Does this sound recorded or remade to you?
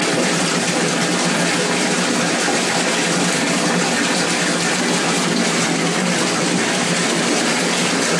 remade